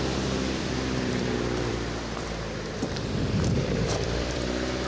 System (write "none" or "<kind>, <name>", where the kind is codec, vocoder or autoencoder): vocoder, BigVGAN v2